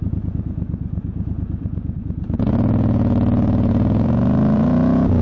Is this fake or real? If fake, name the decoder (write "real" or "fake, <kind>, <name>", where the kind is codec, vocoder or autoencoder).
fake, vocoder, Vocos